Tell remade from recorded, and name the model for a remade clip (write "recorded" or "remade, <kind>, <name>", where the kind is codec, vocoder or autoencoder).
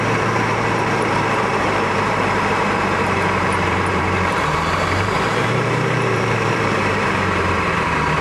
remade, vocoder, BigVGAN v2